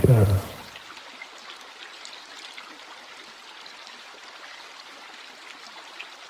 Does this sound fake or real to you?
real